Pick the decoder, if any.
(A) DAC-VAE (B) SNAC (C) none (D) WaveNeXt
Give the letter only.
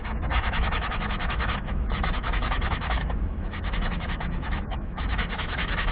A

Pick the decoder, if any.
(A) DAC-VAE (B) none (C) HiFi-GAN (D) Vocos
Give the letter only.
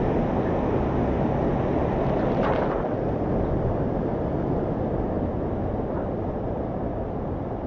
B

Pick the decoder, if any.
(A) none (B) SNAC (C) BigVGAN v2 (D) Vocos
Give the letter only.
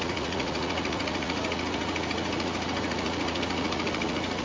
D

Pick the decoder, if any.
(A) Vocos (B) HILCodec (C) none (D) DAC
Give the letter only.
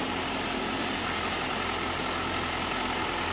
C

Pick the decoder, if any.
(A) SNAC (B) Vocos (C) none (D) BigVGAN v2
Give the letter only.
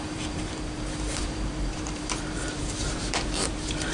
D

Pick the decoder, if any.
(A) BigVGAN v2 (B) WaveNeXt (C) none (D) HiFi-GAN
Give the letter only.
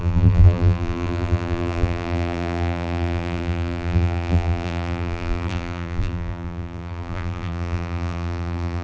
A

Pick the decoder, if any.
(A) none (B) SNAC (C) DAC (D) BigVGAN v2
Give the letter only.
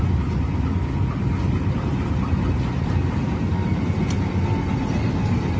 A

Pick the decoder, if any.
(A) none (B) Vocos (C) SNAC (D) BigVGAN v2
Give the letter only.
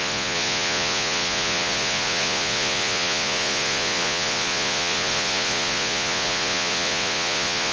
B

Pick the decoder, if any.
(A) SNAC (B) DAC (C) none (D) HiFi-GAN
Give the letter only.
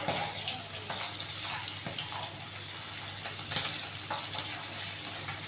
C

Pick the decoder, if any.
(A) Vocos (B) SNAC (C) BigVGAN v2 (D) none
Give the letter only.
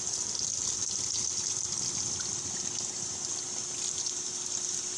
D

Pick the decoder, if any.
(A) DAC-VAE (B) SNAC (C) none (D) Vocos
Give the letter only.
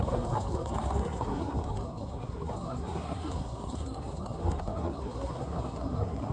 B